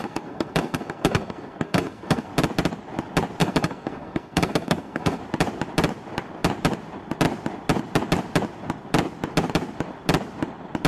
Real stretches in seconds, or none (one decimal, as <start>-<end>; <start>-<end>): 2.3-3.4; 5.2-10.9